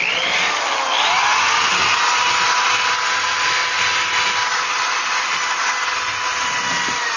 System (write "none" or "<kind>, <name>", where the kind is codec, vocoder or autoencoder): none